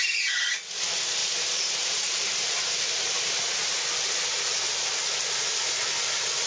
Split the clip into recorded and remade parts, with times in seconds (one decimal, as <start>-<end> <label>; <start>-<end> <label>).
0.0-0.6 remade; 0.6-1.2 recorded; 1.2-2.7 remade; 2.7-6.5 recorded